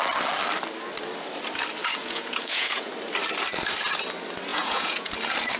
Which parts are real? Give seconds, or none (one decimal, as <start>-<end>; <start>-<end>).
0.0-1.8; 2.9-4.5; 5.1-5.6